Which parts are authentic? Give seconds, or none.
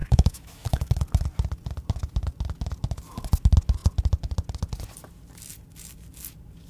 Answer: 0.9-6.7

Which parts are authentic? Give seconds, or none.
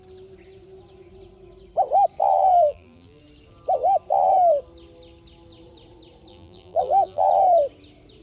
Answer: 0.0-2.3; 3.2-6.3; 7.3-8.2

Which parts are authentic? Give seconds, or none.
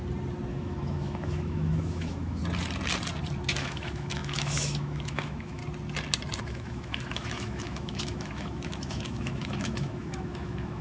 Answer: 0.0-0.5; 2.4-3.6; 5.6-6.4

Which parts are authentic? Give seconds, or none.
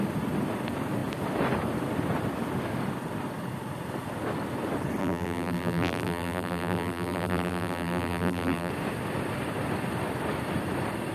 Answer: 0.0-5.0; 8.7-11.1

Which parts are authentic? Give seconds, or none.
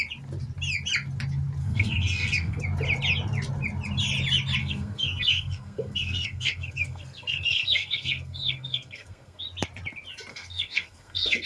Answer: 0.0-1.6; 2.6-4.6; 9.4-10.3